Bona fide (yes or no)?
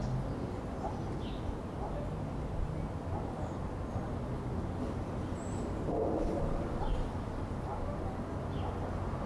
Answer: yes